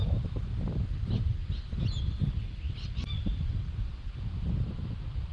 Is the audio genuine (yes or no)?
yes